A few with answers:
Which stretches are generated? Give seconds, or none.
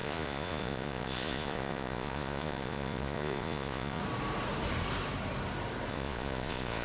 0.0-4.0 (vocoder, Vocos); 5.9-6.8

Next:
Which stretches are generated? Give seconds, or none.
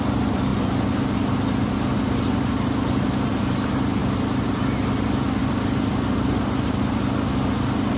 none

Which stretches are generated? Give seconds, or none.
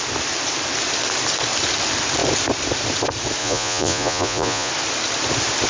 3.4-4.7 (vocoder, Vocos)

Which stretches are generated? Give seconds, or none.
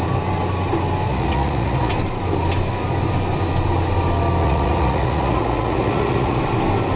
1.1-1.9 (vocoder, Vocos); 4.4-6.4